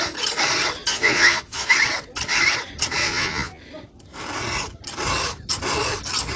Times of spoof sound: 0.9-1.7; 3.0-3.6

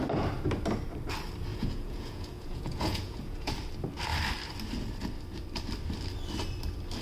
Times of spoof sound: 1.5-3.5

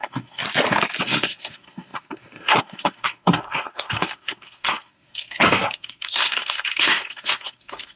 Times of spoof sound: 0.0-0.4; 1.0-8.0